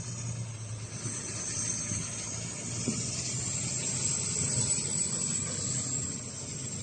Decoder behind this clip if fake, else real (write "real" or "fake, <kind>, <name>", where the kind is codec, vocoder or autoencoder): real